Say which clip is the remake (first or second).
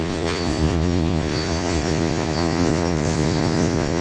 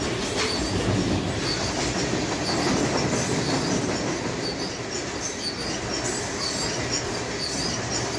first